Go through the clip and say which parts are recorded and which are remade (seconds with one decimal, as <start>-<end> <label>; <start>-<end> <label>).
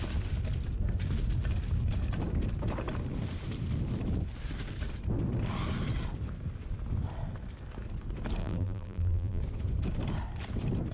0.0-8.4 recorded; 8.4-9.4 remade; 9.4-10.9 recorded